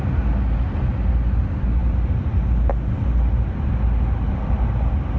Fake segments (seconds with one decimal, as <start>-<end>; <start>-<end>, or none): none